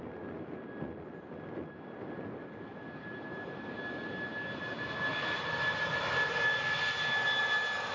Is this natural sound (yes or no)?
yes